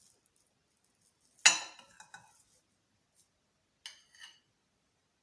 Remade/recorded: recorded